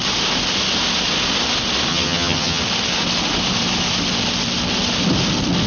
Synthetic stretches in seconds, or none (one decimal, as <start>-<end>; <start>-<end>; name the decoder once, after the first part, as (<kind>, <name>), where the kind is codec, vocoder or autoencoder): 1.9-2.6 (vocoder, HiFi-GAN)